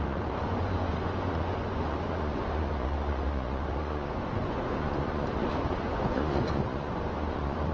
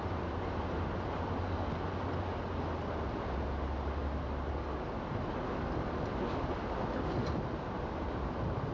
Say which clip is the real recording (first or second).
second